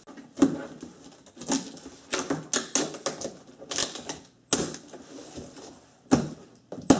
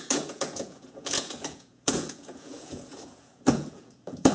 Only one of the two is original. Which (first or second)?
first